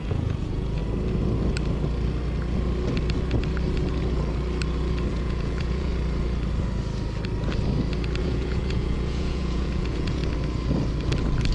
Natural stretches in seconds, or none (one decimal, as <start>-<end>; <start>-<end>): 0.8-5.1; 5.9-8.2; 10.2-11.5